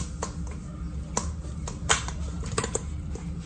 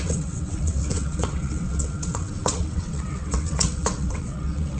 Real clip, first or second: first